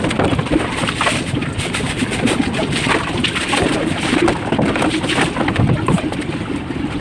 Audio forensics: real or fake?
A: real